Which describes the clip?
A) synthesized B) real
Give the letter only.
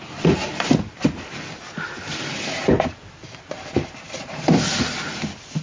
B